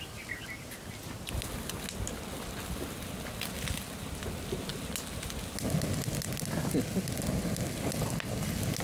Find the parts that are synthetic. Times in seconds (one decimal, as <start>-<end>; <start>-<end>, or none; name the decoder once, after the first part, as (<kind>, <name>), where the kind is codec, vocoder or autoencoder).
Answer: none